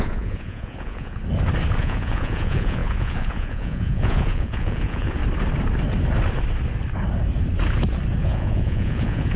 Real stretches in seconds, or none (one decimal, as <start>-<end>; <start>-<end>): 1.2-1.8; 5.2-8.2